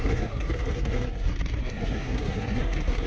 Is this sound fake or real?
fake